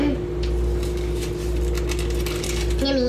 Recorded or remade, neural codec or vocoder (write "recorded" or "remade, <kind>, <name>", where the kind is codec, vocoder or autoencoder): recorded